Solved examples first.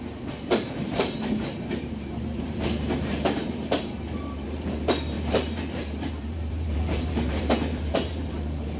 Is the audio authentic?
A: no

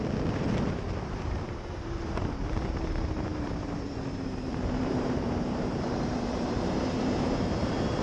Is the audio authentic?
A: no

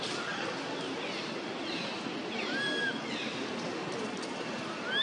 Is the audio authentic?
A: no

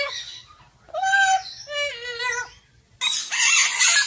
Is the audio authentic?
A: yes